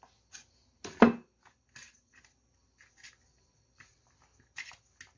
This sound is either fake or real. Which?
real